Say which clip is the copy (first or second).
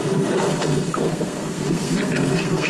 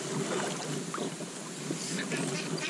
first